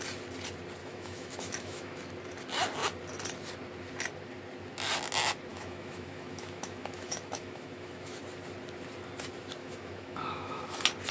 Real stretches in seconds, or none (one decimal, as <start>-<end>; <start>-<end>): 0.0-0.8; 2.1-5.5; 8.2-9.6; 10.6-11.1